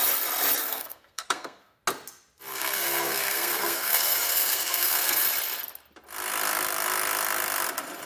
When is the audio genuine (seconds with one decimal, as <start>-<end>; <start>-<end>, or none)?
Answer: 0.0-0.6; 1.8-2.5; 5.2-8.1